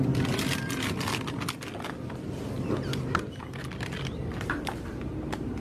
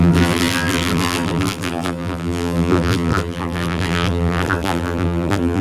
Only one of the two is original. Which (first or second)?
first